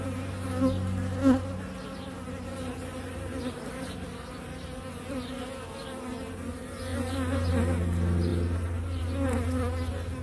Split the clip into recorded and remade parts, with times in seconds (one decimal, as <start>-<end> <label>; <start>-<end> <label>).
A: 0.0-10.2 recorded